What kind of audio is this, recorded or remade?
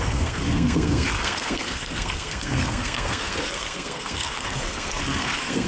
remade